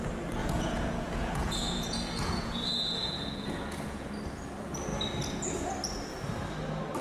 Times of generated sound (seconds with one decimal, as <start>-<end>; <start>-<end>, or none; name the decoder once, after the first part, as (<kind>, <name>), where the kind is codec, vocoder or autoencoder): 0.4-4.1 (vocoder, Vocos)